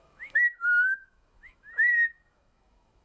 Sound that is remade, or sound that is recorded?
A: remade